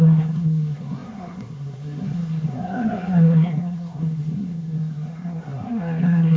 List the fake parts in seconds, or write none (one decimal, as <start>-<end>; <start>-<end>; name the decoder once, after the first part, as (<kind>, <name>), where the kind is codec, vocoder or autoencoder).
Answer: 0.0-6.4 (codec, SNAC)